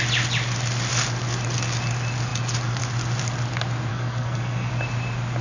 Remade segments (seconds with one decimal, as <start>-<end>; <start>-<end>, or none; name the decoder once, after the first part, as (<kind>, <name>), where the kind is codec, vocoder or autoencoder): 3.9-4.7 (codec, SNAC)